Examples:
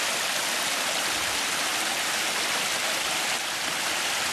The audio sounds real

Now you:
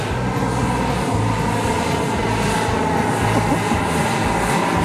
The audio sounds real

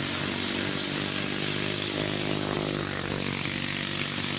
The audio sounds real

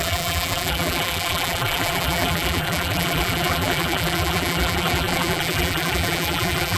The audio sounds fake